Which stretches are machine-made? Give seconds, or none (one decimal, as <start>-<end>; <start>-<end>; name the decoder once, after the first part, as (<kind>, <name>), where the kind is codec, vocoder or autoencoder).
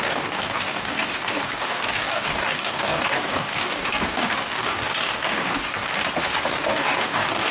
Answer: 0.0-6.0 (codec, DAC); 6.5-7.5